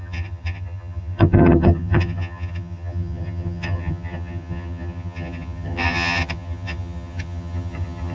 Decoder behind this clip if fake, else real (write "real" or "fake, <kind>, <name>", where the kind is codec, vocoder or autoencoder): fake, vocoder, HiFi-GAN